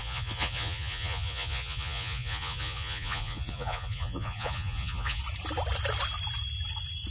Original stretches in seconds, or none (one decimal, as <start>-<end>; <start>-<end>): 5.2-7.1